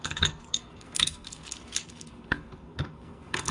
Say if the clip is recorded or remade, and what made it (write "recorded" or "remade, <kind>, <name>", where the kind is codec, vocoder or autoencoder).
remade, codec, SNAC